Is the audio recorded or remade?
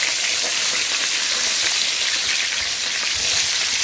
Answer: recorded